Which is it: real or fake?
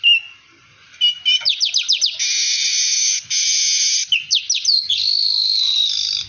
real